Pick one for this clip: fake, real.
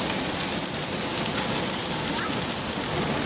real